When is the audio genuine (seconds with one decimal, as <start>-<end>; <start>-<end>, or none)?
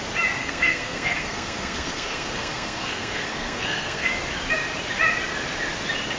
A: 0.0-0.4; 4.1-6.2